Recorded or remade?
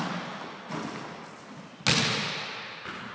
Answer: recorded